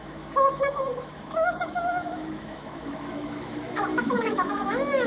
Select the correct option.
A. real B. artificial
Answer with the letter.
B